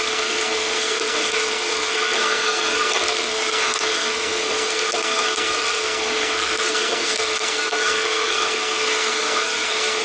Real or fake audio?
fake